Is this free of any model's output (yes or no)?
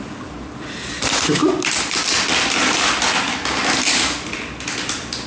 no